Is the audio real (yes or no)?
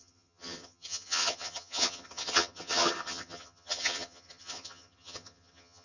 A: no